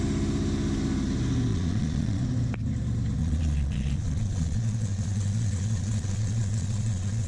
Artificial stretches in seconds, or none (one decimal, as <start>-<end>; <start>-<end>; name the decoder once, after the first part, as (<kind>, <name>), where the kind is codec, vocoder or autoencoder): 1.5-2.2 (vocoder, Vocos); 3.2-7.3